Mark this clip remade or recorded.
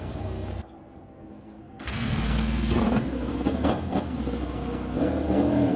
remade